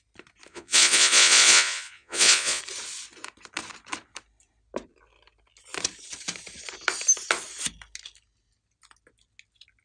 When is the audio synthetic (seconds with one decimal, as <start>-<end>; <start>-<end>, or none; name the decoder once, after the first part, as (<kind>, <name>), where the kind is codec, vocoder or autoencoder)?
0.5-2.6 (vocoder, Vocos)